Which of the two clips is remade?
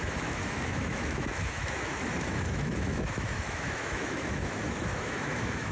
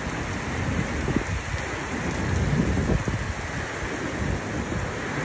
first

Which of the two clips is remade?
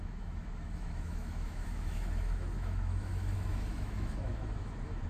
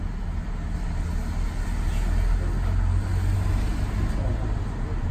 first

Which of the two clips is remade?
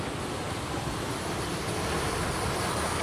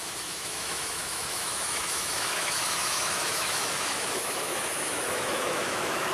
second